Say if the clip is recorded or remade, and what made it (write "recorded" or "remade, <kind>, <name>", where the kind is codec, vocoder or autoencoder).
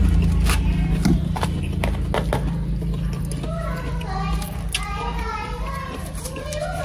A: recorded